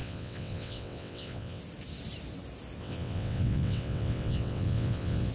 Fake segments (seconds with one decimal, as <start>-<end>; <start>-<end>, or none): 0.0-1.6; 2.8-5.3